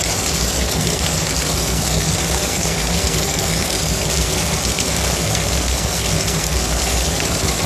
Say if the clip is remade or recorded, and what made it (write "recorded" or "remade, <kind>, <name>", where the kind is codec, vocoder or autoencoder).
remade, codec, SNAC